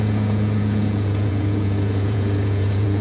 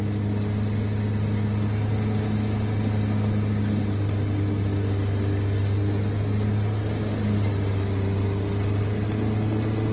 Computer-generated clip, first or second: first